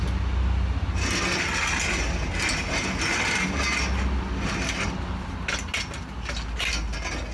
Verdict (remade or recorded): recorded